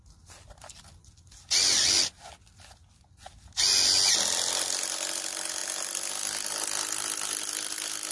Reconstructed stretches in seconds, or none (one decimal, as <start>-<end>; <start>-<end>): none

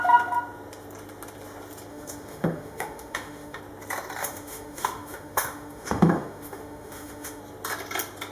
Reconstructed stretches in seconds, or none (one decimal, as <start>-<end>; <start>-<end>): 1.9-3.6; 4.2-7.4

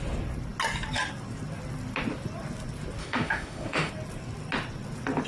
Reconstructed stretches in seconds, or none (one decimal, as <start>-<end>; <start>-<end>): 3.0-3.9